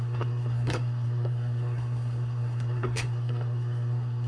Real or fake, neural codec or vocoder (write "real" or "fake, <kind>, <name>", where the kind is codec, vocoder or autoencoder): fake, codec, SNAC